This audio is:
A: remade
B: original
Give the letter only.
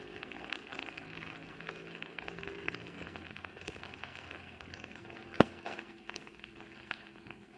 A